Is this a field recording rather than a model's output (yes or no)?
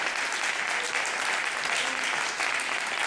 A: yes